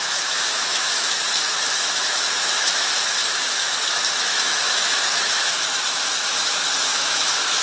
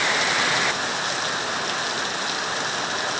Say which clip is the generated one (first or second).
first